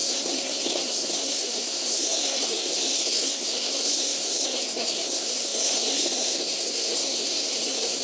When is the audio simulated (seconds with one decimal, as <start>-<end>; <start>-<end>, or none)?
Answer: 0.0-8.0